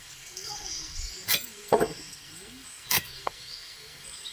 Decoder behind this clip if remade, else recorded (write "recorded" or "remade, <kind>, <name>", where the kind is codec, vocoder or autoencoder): remade, codec, SNAC